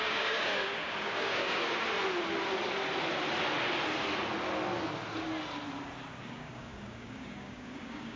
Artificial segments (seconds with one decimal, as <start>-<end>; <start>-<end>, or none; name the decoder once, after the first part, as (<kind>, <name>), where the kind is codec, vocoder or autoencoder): 0.0-1.8 (codec, DAC); 6.2-8.2